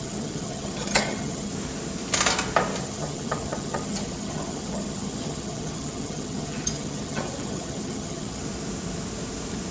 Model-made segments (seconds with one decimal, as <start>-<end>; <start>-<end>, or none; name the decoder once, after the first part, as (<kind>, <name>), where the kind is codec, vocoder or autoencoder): 0.0-1.5 (vocoder, HiFi-GAN); 2.8-8.4